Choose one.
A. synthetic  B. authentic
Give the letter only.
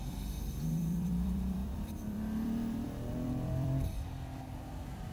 A